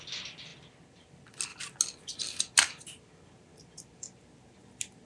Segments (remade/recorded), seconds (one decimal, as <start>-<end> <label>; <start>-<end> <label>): 0.0-5.1 recorded